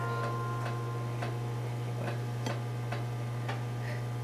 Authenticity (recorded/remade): recorded